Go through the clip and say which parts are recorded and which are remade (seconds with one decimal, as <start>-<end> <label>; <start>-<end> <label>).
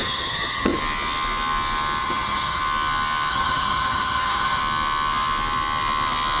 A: 0.0-0.8 remade; 0.8-2.0 recorded; 2.0-2.6 remade; 2.6-3.3 recorded; 3.3-4.6 remade; 4.6-6.4 recorded